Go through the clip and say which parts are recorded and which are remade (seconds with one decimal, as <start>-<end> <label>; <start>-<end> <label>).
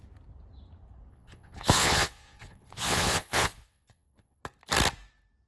0.0-1.1 recorded; 1.1-4.4 remade; 4.4-5.5 recorded